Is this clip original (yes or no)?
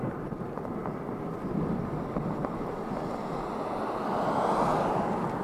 yes